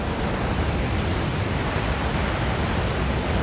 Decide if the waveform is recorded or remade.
recorded